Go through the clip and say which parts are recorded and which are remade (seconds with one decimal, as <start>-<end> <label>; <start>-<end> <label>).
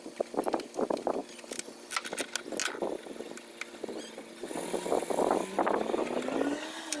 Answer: 0.0-7.0 recorded